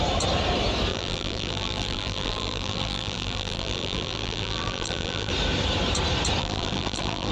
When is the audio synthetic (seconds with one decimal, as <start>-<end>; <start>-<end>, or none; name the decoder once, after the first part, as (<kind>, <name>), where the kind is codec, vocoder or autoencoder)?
0.9-5.3 (vocoder, BigVGAN v2); 6.4-7.3